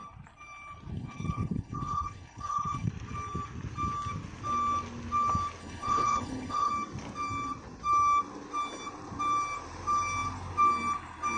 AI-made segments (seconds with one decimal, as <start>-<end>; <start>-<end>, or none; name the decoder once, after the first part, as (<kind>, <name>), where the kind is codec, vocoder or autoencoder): 0.9-2.9 (codec, HILCodec); 5.6-6.7